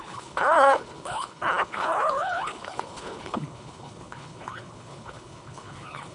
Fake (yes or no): yes